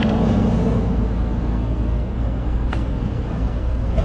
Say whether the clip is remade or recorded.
remade